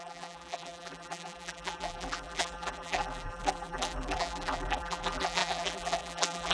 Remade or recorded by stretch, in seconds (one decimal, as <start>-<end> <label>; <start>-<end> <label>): 0.0-6.5 remade